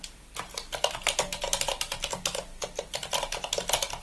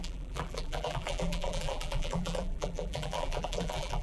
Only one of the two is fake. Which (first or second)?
second